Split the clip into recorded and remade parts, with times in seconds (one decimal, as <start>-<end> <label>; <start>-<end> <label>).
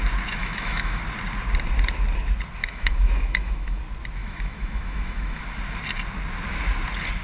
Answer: 0.0-0.4 recorded; 0.4-1.0 remade; 1.0-2.6 recorded; 2.6-3.8 remade; 3.8-4.2 recorded; 4.2-5.4 remade; 5.4-7.2 recorded